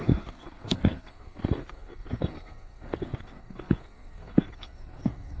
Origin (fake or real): fake